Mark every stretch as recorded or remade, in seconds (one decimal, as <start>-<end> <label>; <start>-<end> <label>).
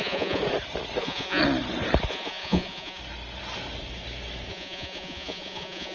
0.0-0.4 remade; 0.4-1.0 recorded; 1.0-1.4 remade; 1.4-2.1 recorded; 2.1-3.0 remade; 3.0-4.5 recorded; 4.5-5.9 remade